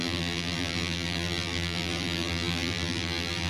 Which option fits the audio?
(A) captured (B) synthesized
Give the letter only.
B